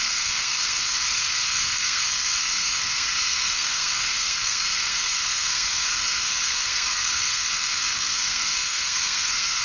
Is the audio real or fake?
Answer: fake